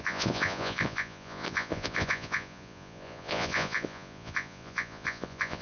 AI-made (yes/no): yes